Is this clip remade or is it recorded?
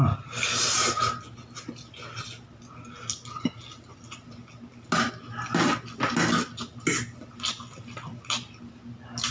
recorded